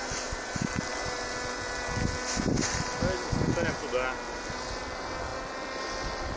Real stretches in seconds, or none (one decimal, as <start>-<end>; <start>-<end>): 0.0-6.4